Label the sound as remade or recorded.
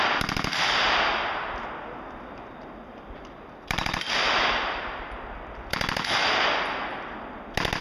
recorded